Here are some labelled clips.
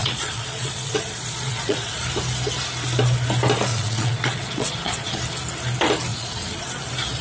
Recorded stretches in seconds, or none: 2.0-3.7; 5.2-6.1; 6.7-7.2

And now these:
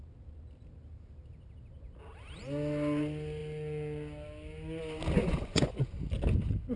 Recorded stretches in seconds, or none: 0.0-5.2; 5.8-6.8

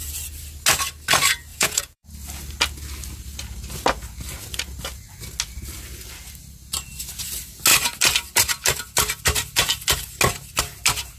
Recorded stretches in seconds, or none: 0.0-1.5; 2.1-11.2

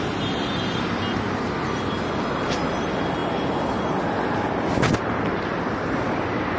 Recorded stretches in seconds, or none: 0.0-6.6

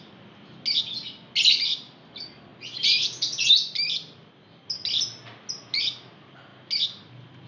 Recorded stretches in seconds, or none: 0.0-7.5

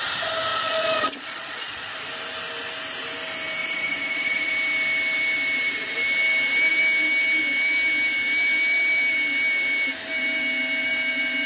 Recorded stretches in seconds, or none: 0.0-0.5; 1.9-3.6; 4.5-11.5

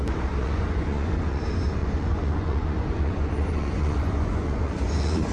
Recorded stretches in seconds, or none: 0.0-0.4; 1.4-1.8

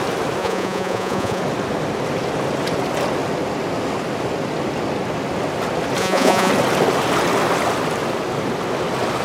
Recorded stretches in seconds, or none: 0.0-0.4; 1.4-6.0; 6.5-9.2